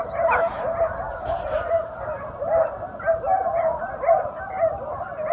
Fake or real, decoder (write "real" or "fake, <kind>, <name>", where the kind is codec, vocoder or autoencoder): real